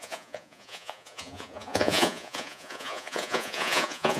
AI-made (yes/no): yes